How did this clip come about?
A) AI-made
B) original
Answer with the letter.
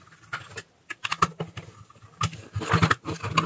B